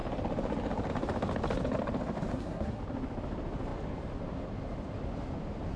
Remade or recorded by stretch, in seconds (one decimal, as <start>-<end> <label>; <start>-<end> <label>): 0.0-2.3 recorded; 2.3-2.8 remade; 2.8-5.8 recorded